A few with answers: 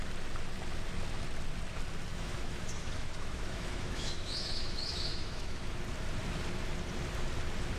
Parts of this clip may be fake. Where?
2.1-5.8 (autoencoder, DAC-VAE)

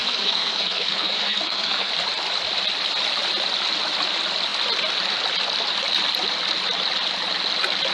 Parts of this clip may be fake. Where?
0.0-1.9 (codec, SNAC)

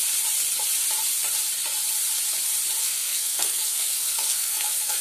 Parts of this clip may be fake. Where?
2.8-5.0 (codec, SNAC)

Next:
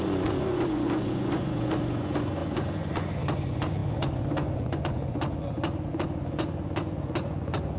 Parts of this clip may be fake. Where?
0.0-7.8 (vocoder, Vocos)

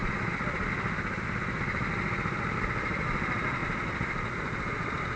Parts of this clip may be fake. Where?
none

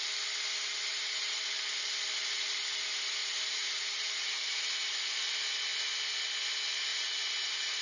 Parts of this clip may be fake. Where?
0.9-1.5 (vocoder, BigVGAN v2); 3.2-5.0; 6.9-7.8

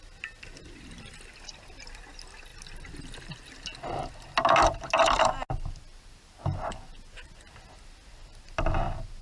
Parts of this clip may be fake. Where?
none